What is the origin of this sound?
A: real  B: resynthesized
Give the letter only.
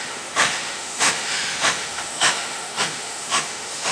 B